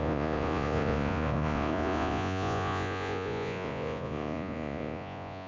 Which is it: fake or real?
fake